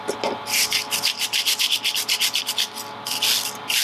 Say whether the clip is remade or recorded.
recorded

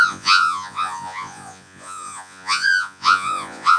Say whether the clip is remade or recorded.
remade